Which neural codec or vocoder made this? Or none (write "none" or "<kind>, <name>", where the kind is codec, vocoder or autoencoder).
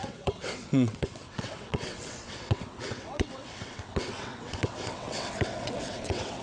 vocoder, WaveNeXt